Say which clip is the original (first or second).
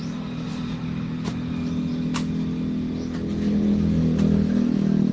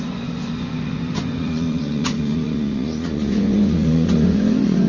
first